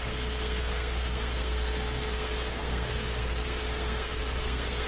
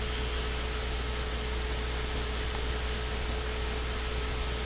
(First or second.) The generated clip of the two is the first